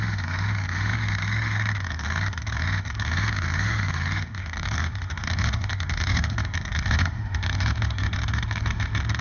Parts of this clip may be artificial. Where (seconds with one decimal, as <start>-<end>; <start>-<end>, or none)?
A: 0.0-9.2